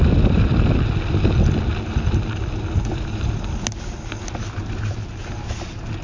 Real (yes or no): yes